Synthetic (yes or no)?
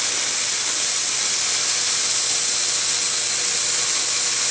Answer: no